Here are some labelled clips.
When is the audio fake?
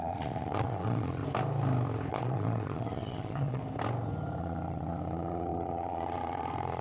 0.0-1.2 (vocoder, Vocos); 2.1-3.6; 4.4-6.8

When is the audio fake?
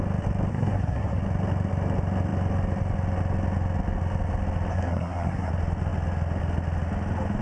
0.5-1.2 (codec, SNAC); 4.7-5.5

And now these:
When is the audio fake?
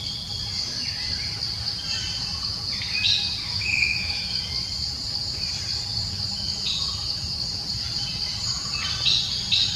3.4-4.4 (autoencoder, DAC-VAE)